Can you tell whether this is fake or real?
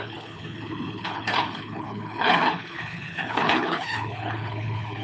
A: fake